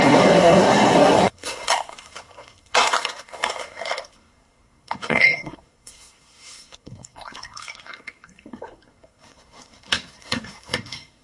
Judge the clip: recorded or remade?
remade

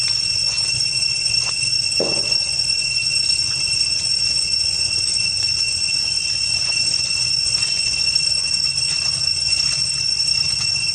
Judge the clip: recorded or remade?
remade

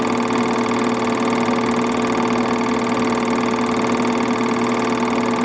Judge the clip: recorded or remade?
recorded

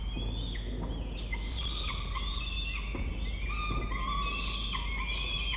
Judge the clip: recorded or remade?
recorded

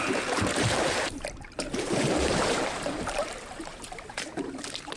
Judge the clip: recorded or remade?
remade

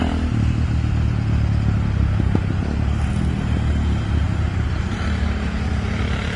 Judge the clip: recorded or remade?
recorded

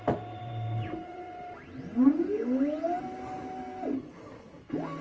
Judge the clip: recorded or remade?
remade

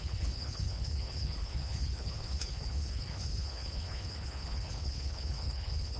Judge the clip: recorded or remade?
remade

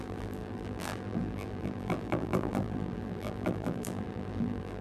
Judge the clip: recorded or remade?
remade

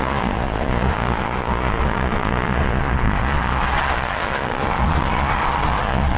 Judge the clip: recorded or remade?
remade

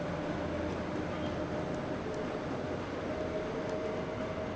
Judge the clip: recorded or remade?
recorded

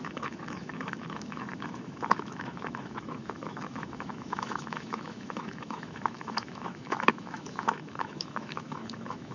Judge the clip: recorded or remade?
remade